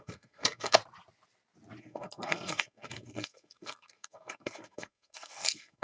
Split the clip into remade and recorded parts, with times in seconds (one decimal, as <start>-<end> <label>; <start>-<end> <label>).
0.0-0.8 remade; 0.8-1.8 recorded; 1.8-5.8 remade